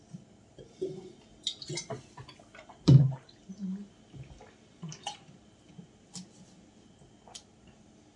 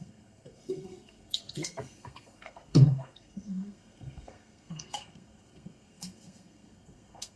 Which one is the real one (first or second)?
first